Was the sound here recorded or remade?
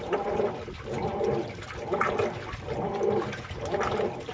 recorded